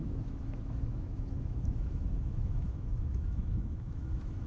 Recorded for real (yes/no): no